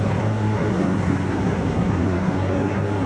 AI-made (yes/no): yes